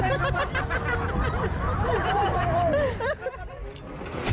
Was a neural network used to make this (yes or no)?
yes